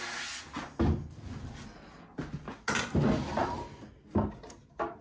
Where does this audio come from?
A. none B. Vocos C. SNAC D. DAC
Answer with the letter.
A